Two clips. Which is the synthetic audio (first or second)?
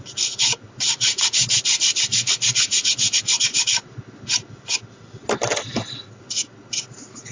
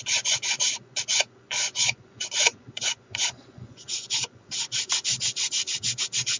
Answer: second